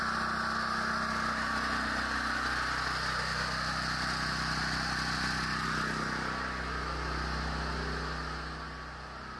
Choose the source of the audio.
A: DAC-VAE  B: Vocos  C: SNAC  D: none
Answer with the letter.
D